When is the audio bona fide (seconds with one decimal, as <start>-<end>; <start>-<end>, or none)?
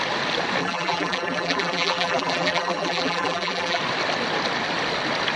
0.0-0.6; 3.8-5.4